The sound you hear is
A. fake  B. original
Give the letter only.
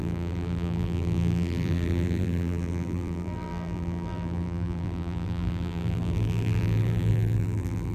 A